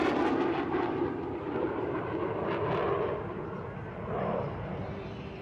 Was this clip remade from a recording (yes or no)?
no